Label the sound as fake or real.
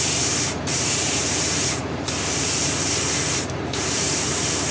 fake